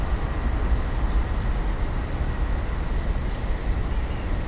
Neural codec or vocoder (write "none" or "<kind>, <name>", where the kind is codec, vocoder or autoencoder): none